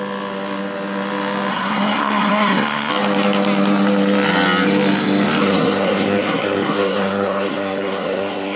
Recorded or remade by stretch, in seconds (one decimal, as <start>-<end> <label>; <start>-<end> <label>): 0.0-1.5 recorded; 1.5-2.9 remade; 2.9-5.4 recorded; 5.4-8.6 remade